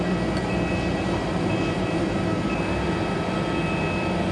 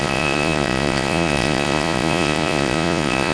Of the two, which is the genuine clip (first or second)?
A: first